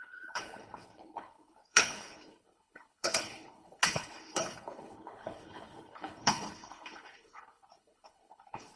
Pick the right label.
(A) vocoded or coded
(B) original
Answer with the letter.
A